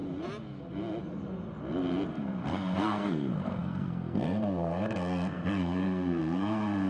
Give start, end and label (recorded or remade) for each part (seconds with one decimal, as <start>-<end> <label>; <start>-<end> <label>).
0.0-2.1 recorded; 2.1-6.9 remade